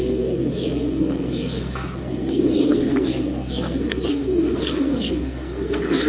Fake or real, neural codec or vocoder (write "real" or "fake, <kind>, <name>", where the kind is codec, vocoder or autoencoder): fake, codec, SNAC